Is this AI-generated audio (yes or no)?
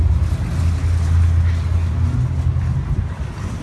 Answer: no